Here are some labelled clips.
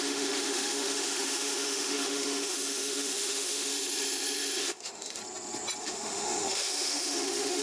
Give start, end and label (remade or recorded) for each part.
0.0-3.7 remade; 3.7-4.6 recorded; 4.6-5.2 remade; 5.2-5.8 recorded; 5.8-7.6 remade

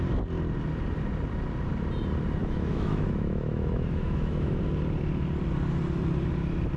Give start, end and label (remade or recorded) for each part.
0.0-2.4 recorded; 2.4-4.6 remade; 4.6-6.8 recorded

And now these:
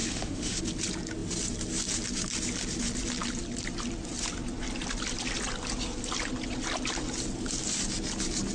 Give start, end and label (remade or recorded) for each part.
0.0-0.6 remade; 0.6-8.5 recorded

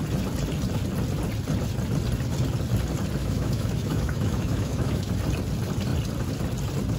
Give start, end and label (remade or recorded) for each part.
0.0-3.2 recorded; 3.2-5.1 remade; 5.1-7.0 recorded

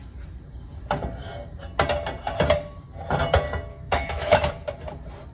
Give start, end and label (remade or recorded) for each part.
0.0-3.7 recorded; 3.7-4.5 remade; 4.5-5.3 recorded

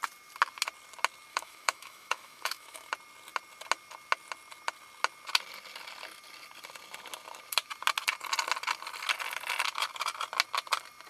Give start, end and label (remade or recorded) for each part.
0.0-1.3 recorded; 1.3-2.9 remade; 2.9-11.1 recorded